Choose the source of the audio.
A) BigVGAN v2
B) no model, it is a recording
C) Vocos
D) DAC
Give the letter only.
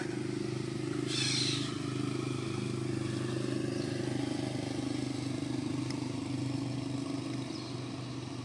B